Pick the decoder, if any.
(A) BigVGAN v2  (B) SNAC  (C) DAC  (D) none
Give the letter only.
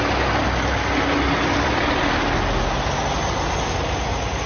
D